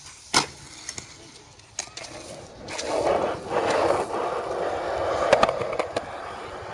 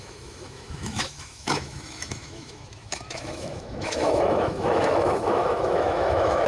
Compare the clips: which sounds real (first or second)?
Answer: first